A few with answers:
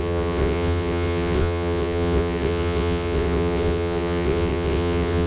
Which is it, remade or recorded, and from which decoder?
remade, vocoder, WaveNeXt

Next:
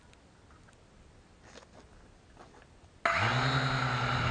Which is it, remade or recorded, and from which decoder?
recorded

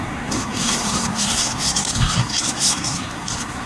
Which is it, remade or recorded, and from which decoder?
remade, codec, SNAC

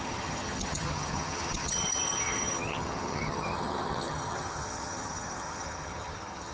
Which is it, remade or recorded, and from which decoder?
remade, vocoder, HiFi-GAN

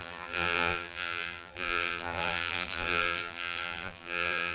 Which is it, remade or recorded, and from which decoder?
remade, vocoder, BigVGAN v2